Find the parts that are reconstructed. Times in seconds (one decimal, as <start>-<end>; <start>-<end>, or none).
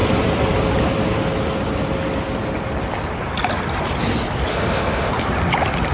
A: 4.5-5.1